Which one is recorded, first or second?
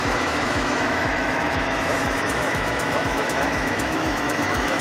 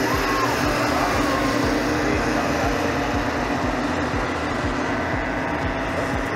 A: second